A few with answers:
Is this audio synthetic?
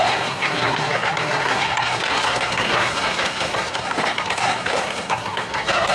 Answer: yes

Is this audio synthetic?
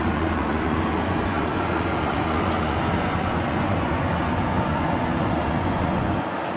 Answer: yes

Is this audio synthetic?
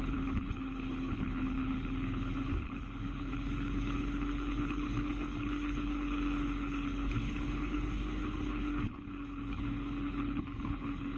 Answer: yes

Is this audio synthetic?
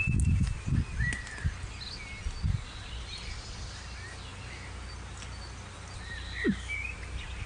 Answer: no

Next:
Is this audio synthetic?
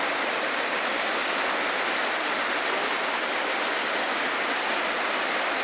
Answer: no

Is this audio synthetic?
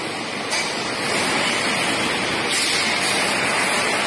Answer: yes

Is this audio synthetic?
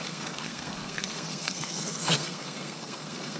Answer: yes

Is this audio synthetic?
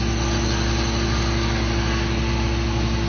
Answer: no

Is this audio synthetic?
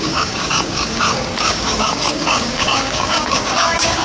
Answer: yes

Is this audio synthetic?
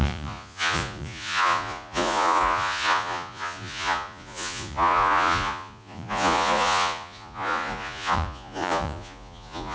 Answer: yes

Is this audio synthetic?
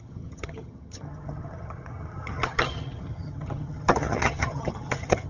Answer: yes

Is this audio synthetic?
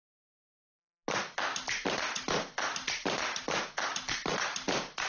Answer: no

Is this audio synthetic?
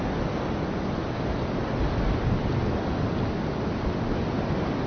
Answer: no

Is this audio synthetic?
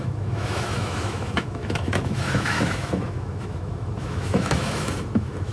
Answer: yes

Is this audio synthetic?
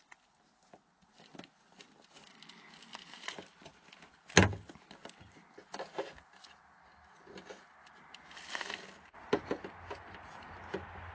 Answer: no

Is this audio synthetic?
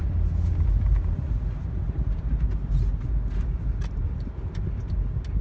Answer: no